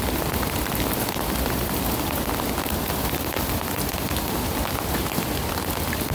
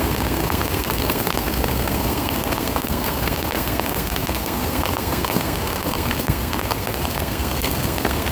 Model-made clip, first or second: second